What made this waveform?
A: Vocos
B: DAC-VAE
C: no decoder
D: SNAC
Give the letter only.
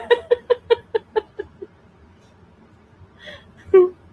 C